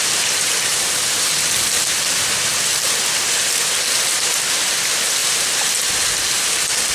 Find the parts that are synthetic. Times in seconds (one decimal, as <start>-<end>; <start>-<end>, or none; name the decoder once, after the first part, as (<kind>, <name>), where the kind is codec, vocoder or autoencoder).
0.7-1.3 (vocoder, BigVGAN v2); 5.2-5.9